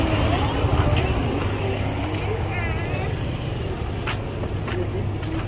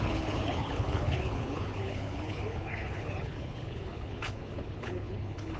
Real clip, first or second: first